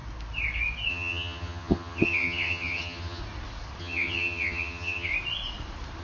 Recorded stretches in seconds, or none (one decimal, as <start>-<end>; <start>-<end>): 0.0-0.9; 3.2-3.8; 5.1-6.0